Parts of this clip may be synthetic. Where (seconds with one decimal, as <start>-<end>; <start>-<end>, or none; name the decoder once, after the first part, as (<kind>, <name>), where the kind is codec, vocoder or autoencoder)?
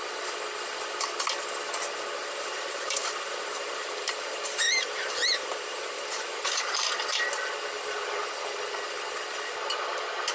2.2-6.9 (vocoder, BigVGAN v2)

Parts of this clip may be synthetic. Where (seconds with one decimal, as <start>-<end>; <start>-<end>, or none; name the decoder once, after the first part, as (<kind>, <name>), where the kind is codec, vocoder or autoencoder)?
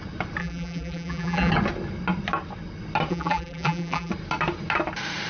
0.4-1.5 (vocoder, BigVGAN v2); 3.1-4.1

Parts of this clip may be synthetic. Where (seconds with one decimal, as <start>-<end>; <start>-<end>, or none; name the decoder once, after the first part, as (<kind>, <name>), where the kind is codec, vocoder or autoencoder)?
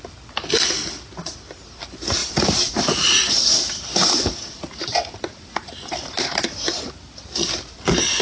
2.2-7.1 (vocoder, BigVGAN v2)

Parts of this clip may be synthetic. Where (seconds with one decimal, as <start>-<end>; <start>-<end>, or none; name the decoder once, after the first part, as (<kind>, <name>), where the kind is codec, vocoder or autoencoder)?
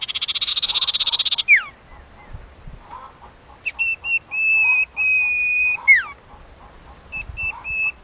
0.5-1.7 (autoencoder, DAC-VAE)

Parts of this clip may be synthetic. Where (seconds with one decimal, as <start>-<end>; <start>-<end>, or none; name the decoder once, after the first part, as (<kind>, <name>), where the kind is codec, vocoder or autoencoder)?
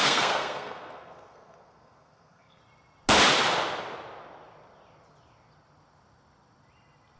0.0-2.6 (codec, SNAC)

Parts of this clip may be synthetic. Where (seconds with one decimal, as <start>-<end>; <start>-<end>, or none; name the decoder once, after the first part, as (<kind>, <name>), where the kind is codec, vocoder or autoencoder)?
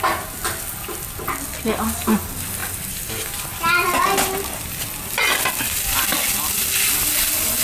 none